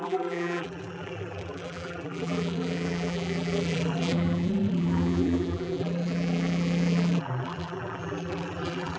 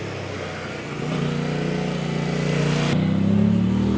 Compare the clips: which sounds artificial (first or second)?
first